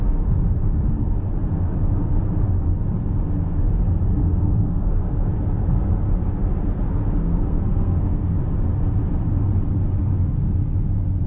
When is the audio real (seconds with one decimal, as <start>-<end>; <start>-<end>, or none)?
0.0-4.2; 4.9-7.2; 8.4-11.3